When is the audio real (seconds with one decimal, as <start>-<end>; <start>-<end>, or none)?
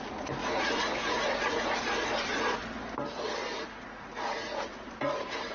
2.6-3.4